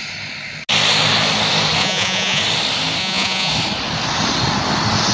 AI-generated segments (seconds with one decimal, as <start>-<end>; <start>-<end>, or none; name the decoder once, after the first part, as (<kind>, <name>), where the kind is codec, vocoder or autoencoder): 1.8-2.4 (vocoder, Vocos); 3.0-3.5